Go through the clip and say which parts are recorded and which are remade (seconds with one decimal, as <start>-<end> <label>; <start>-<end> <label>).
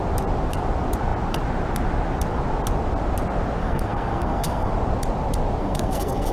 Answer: 0.0-3.6 recorded; 3.6-4.7 remade; 4.7-5.6 recorded; 5.6-6.3 remade